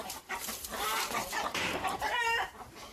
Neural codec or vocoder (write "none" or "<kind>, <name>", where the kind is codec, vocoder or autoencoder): vocoder, BigVGAN v2